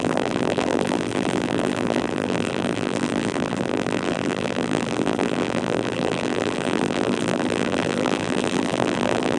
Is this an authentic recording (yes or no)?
no